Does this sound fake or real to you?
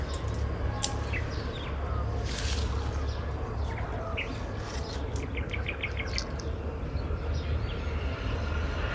real